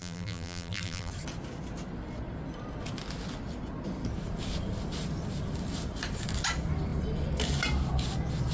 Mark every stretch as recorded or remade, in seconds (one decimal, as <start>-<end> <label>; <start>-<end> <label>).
0.0-1.1 remade; 1.1-8.5 recorded